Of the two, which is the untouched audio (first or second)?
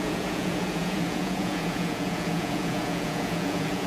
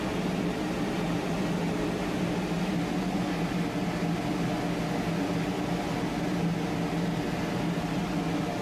second